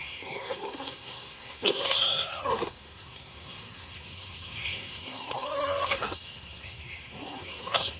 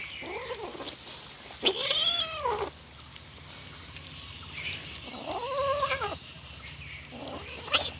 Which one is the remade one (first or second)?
first